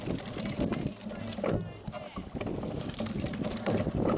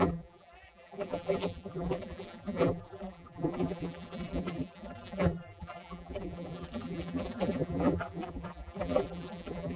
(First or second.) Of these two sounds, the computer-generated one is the second